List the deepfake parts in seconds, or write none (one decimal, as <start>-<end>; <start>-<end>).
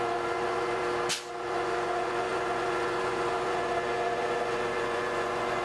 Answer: 0.0-0.8; 1.3-5.6